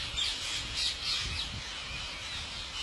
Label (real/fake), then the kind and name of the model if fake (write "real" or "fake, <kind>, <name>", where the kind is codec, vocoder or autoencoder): real